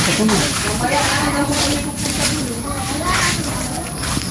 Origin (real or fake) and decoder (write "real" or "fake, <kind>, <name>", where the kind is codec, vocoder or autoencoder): fake, vocoder, BigVGAN v2